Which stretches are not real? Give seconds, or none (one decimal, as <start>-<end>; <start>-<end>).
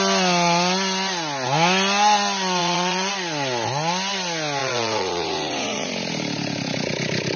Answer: 2.6-3.1; 4.6-5.9